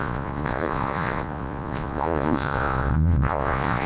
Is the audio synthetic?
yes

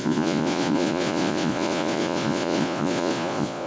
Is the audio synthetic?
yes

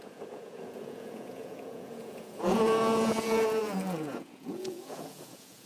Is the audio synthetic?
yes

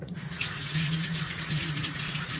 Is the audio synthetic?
yes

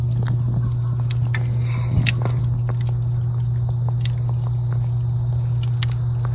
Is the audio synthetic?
no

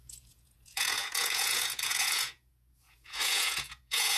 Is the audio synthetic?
yes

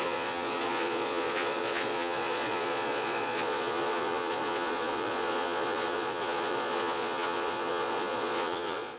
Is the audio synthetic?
yes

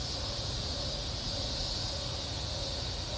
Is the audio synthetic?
yes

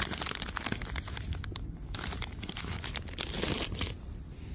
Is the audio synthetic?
no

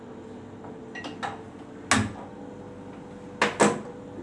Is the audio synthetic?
no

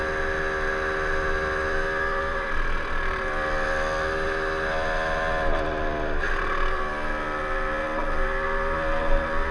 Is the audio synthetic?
no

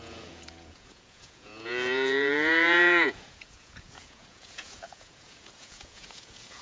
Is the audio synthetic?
yes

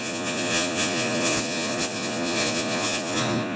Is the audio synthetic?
yes